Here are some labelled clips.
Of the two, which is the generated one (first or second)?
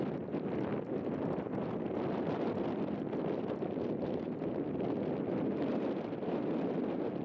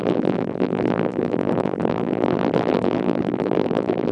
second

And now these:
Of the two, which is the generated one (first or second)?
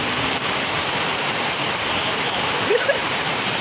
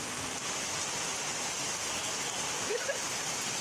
first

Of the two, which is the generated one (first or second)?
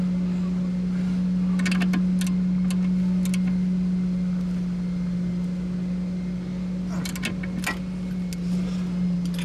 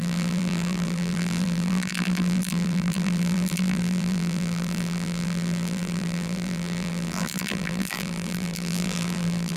second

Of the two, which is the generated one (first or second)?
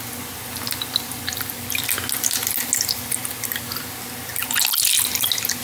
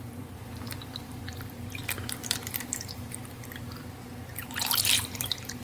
second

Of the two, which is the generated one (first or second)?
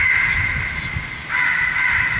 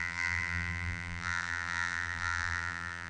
second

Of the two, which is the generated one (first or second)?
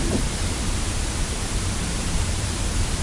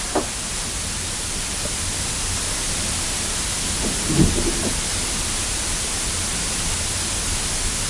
first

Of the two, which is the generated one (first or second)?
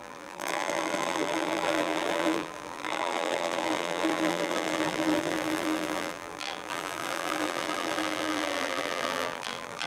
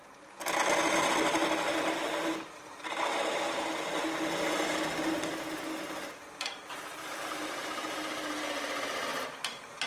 first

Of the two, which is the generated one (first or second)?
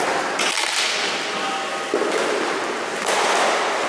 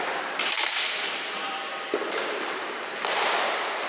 second